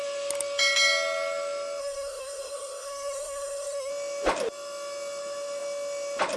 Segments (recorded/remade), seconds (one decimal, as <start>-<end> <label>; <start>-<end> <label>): 0.0-1.8 recorded; 1.8-3.9 remade; 3.9-6.4 recorded